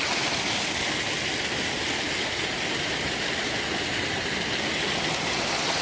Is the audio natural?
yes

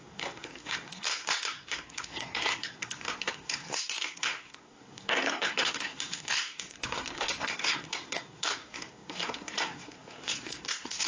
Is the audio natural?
no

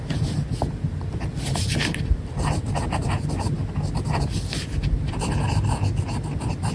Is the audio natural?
yes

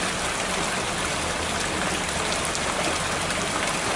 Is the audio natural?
yes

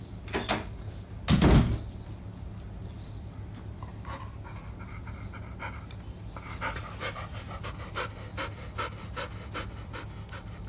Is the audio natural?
yes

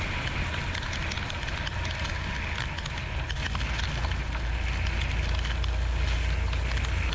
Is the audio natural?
yes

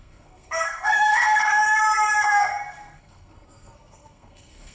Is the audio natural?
no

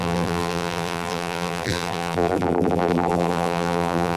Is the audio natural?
no